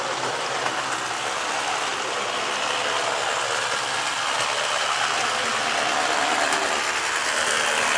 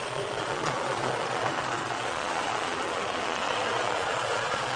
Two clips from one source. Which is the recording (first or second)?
first